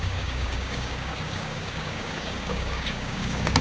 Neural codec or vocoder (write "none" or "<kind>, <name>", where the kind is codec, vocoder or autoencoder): codec, DAC